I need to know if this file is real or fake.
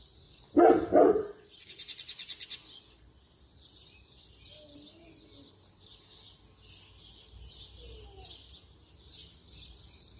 real